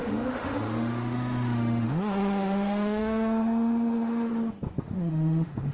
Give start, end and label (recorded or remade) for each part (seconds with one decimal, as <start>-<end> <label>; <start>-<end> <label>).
0.0-4.3 remade; 4.3-4.8 recorded; 4.8-5.7 remade